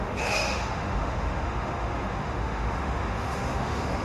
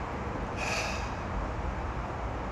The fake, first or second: first